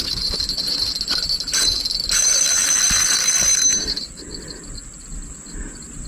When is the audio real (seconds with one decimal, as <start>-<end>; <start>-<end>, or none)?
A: 0.0-6.1